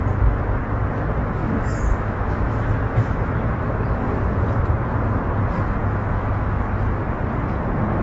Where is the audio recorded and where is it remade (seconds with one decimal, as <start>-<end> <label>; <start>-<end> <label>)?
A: 0.0-1.4 recorded; 1.4-3.5 remade; 3.5-5.8 recorded; 5.8-6.7 remade; 6.7-8.0 recorded